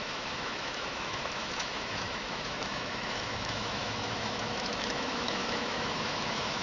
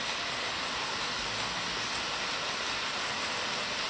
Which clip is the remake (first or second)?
first